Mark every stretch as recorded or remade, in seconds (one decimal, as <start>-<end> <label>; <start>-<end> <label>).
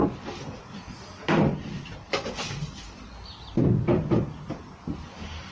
0.0-1.5 recorded; 1.5-2.1 remade; 2.1-5.5 recorded